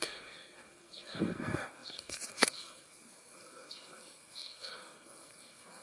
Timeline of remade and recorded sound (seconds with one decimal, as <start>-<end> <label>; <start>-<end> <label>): 0.0-5.8 remade